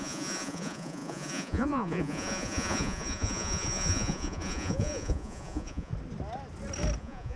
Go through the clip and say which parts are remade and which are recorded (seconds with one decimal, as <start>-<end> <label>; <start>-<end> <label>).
0.0-5.9 remade; 5.9-7.0 recorded; 7.0-7.4 remade